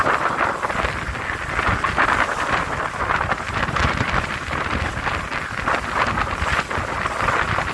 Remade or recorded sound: recorded